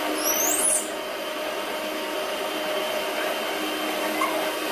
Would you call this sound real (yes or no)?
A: yes